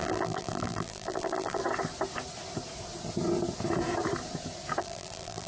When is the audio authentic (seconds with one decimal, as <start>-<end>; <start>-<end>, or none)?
1.6-4.8

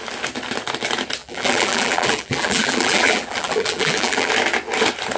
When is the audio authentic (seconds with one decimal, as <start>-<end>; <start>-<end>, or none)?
0.0-1.2; 4.3-5.2

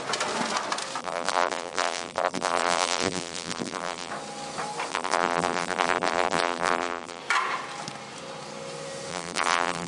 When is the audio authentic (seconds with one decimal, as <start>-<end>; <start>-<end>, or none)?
0.0-1.0; 4.1-4.9; 7.2-9.1

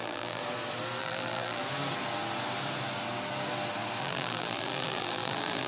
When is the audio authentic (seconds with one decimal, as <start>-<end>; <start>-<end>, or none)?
0.4-1.0; 1.6-4.0